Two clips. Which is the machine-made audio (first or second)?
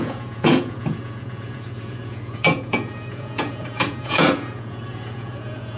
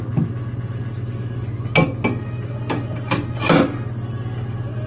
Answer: first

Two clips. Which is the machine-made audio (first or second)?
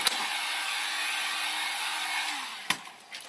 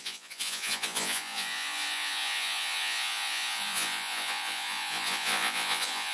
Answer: second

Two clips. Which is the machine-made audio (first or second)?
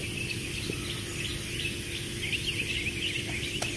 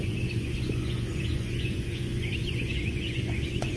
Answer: second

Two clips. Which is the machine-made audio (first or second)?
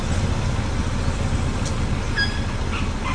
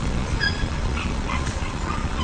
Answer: second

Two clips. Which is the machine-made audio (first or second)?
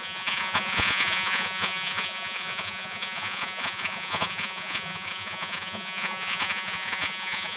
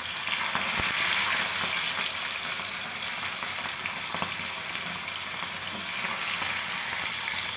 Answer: first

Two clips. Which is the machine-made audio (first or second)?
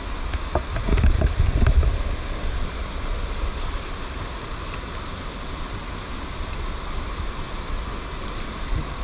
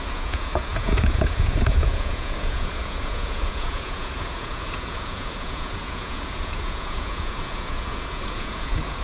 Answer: second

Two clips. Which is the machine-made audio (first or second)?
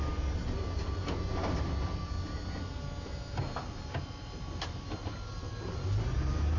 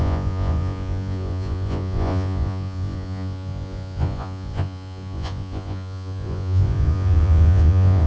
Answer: second